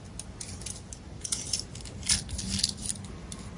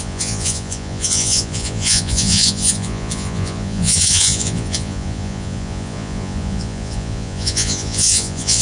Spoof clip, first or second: second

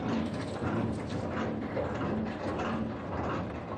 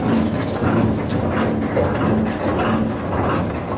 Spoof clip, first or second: first